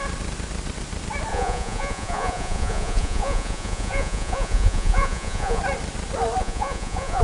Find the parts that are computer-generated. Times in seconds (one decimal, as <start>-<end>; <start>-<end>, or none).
1.3-5.6; 6.4-7.2